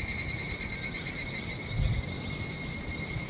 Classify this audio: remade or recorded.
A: recorded